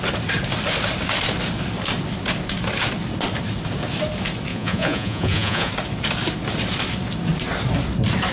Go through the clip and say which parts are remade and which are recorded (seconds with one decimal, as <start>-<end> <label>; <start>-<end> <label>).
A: 0.0-4.5 recorded; 4.5-5.7 remade; 5.7-8.3 recorded